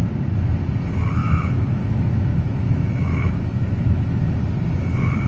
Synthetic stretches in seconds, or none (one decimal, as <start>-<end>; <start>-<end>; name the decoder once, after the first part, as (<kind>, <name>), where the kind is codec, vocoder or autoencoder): 1.2-4.4 (autoencoder, DAC-VAE)

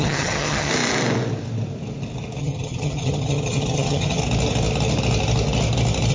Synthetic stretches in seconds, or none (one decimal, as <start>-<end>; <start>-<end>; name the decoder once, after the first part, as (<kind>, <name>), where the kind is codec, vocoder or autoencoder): 0.0-0.7 (vocoder, HiFi-GAN); 2.4-4.2

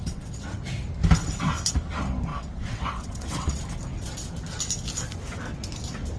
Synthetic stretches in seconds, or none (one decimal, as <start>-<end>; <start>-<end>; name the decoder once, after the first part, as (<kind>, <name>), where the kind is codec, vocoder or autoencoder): 0.0-0.6 (vocoder, WaveNeXt); 2.3-3.6